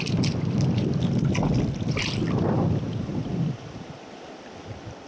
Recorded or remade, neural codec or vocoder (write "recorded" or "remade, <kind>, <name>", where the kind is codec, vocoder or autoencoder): recorded